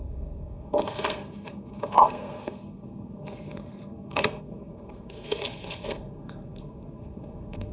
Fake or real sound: fake